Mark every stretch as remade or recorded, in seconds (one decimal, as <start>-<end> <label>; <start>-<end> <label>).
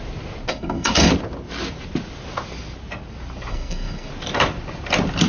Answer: 0.0-0.5 recorded; 0.5-1.1 remade; 1.1-3.5 recorded; 3.5-4.1 remade; 4.1-5.3 recorded